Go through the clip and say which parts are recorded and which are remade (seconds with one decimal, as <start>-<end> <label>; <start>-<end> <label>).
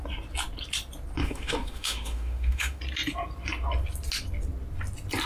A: 0.0-1.2 recorded; 1.2-2.8 remade; 2.8-5.3 recorded